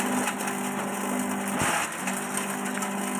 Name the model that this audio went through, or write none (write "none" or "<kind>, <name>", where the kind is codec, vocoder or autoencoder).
none